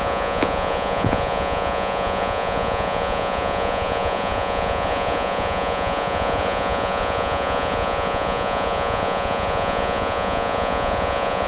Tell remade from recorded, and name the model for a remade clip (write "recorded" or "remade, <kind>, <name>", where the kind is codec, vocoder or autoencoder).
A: remade, vocoder, Vocos